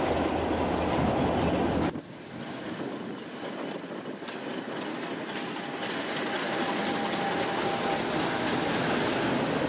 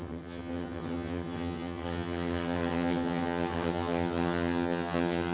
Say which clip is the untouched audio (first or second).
first